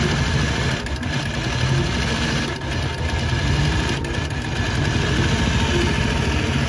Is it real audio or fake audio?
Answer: real